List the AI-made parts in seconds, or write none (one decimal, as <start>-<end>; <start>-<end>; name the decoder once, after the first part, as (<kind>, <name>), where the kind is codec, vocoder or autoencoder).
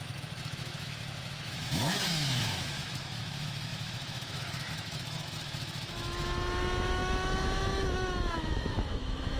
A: 0.0-9.4 (autoencoder, DAC-VAE)